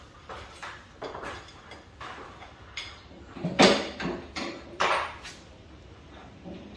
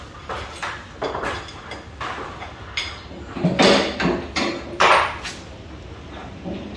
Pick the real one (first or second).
second